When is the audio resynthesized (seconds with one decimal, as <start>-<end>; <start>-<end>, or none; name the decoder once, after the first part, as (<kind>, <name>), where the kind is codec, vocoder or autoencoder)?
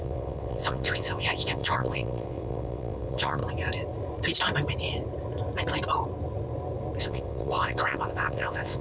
0.0-3.4 (vocoder, WaveNeXt); 7.0-8.8